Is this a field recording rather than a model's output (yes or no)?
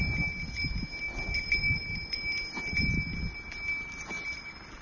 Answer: yes